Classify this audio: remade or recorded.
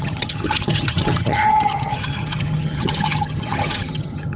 remade